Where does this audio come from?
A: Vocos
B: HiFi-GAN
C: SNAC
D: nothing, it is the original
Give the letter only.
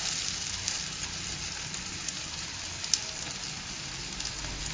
D